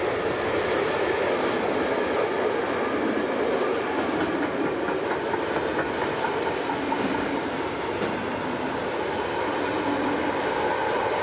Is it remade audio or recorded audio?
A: recorded